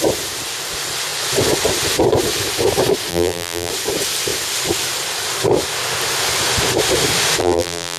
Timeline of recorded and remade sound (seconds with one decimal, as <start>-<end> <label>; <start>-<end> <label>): 0.0-3.1 recorded; 3.1-3.7 remade; 3.7-7.4 recorded; 7.4-8.0 remade